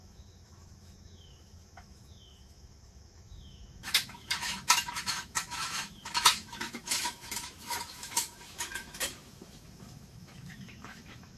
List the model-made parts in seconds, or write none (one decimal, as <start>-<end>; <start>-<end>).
0.0-11.4